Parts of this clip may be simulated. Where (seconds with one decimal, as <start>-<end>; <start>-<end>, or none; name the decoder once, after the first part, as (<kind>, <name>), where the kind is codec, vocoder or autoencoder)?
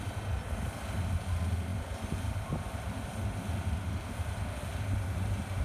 none